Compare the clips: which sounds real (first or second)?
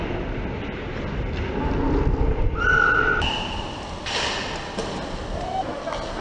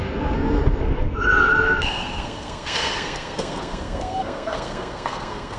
first